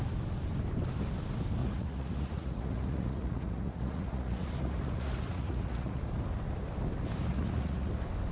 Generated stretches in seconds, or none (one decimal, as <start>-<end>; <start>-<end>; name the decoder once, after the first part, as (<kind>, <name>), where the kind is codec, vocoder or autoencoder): 1.6-6.0 (vocoder, Vocos); 7.3-7.9